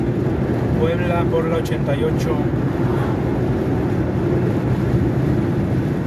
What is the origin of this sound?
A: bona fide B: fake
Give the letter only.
A